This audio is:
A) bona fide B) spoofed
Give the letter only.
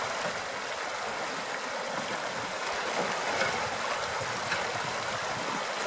A